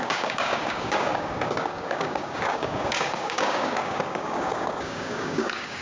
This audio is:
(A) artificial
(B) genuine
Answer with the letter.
A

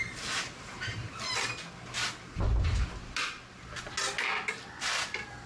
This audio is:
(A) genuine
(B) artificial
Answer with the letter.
A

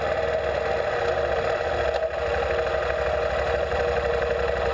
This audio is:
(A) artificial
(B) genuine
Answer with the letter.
B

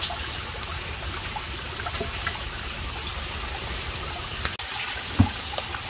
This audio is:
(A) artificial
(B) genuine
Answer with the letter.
B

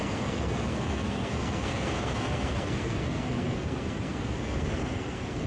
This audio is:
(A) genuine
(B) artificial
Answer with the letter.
B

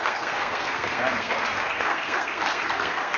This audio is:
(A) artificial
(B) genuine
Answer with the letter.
A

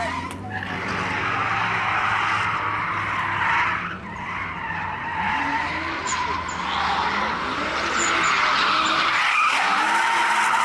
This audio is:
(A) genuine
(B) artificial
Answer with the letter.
A